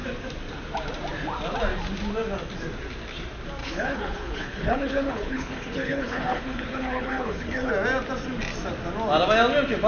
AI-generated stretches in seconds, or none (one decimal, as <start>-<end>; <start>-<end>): 3.6-7.7